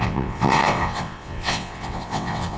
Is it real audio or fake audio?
fake